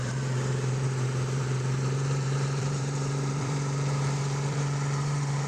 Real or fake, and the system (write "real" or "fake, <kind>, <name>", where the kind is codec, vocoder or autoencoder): fake, vocoder, BigVGAN v2